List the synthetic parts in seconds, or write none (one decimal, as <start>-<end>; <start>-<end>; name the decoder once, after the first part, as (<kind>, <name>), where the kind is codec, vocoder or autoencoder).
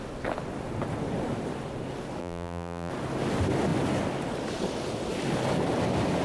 2.2-2.9 (vocoder, BigVGAN v2)